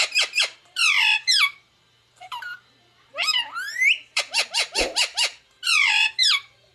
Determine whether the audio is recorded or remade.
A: remade